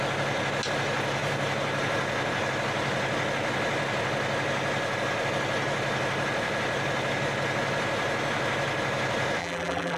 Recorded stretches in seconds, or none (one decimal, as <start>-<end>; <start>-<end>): 0.0-9.4